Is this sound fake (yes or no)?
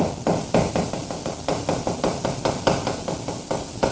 no